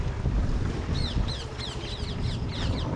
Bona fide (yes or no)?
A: yes